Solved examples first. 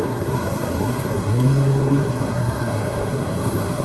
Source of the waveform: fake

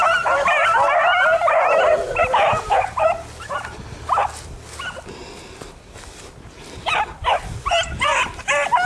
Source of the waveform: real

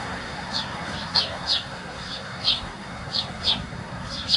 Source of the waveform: fake